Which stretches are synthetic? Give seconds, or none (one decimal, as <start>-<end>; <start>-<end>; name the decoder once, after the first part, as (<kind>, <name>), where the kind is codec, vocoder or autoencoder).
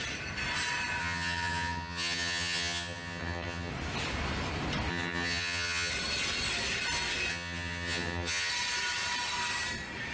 1.0-3.7 (vocoder, HiFi-GAN); 4.9-5.9; 7.3-8.5